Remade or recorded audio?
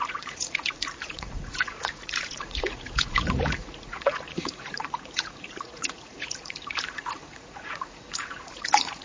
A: remade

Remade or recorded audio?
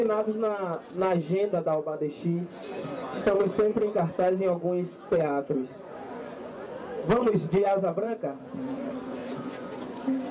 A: remade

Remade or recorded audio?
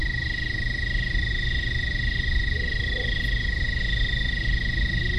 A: recorded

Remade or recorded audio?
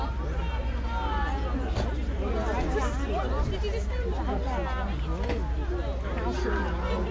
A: recorded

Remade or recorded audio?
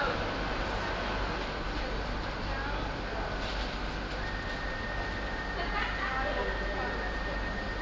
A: recorded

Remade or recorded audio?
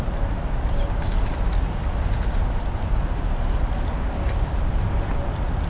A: recorded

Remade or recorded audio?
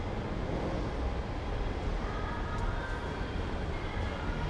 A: recorded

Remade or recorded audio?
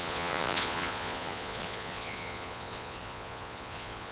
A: remade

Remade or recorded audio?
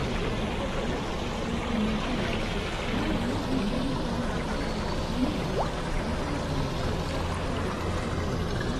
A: recorded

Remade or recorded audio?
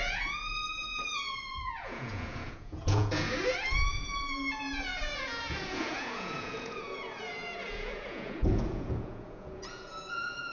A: remade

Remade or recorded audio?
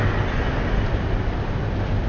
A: recorded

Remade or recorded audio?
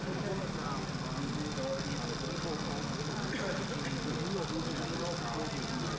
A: recorded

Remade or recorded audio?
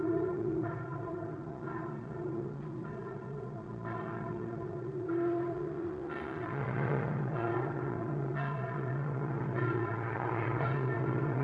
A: remade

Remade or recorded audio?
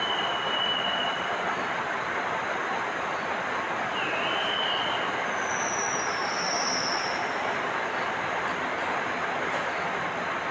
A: recorded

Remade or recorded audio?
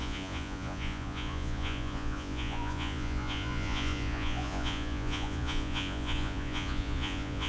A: remade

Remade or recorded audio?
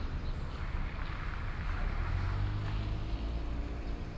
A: recorded